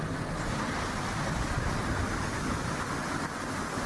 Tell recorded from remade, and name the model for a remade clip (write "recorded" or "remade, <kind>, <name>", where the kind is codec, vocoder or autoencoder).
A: recorded